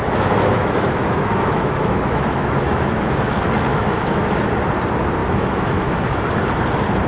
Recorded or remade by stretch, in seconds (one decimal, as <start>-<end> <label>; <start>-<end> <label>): 0.0-3.1 remade; 3.1-3.7 recorded; 3.7-4.5 remade; 4.5-5.2 recorded; 5.2-6.2 remade; 6.2-7.1 recorded

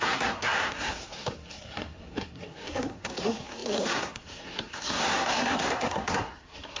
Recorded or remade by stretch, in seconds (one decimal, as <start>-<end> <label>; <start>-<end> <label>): 0.0-6.8 remade

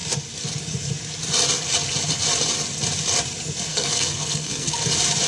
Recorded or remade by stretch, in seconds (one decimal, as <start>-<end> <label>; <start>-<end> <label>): 0.0-3.7 recorded; 3.7-4.7 remade; 4.7-5.3 recorded

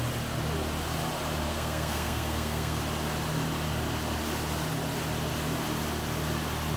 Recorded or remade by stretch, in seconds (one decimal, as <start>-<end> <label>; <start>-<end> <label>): 0.0-1.5 recorded; 1.5-2.8 remade; 2.8-6.8 recorded

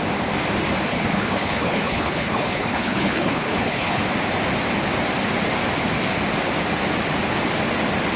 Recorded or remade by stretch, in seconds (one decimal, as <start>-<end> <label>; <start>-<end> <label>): 0.0-0.9 recorded; 0.9-4.0 remade; 4.0-8.2 recorded

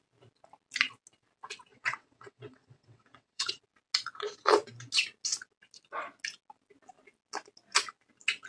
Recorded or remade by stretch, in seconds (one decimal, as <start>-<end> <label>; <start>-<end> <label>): 0.0-1.7 recorded; 1.7-3.6 remade; 3.6-8.5 recorded